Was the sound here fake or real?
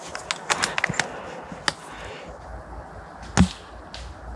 real